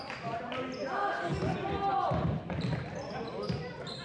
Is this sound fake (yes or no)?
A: no